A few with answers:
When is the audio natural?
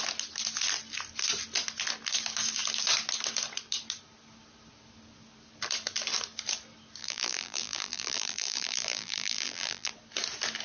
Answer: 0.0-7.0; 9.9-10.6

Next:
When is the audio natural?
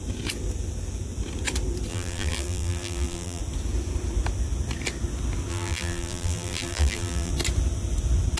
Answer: 0.0-1.9; 3.4-5.5; 7.3-8.4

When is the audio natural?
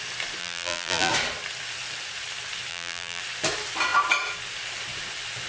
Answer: 0.0-0.4; 1.1-2.7; 3.2-5.5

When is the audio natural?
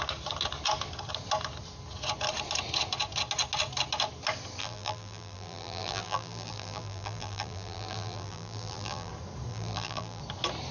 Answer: 0.0-4.6; 9.1-9.5; 10.2-10.7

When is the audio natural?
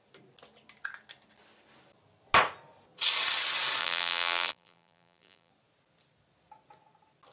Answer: 0.0-3.8; 5.5-7.3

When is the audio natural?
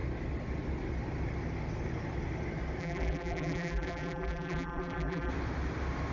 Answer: 0.0-2.8; 5.3-6.1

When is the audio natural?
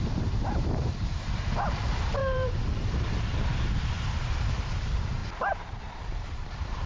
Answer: none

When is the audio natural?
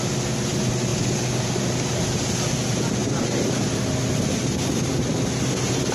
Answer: 0.0-3.0; 4.9-5.9